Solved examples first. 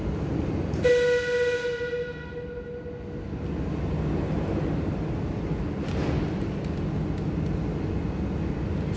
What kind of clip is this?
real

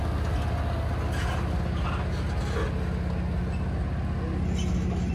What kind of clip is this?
real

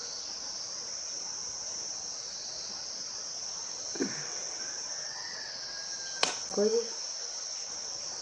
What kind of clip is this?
real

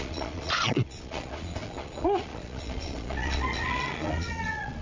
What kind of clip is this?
fake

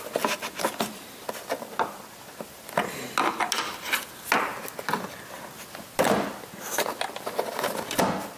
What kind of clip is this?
real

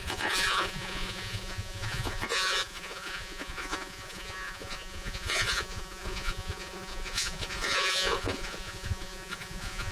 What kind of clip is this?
fake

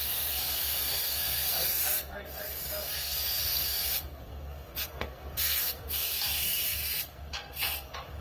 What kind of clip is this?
fake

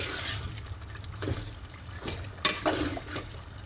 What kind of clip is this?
real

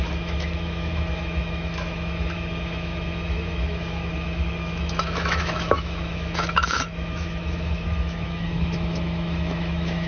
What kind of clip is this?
fake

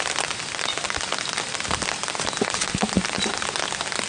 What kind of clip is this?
real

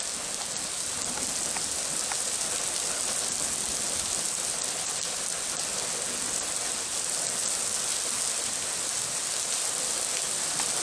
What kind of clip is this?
real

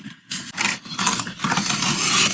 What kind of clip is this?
real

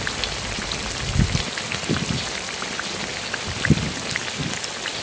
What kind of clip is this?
real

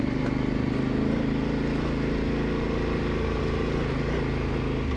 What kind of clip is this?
real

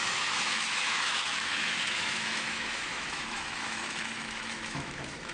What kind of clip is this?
fake